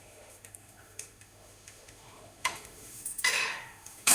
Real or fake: fake